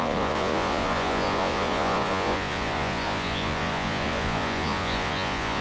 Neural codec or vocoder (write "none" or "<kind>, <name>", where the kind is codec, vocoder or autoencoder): vocoder, Vocos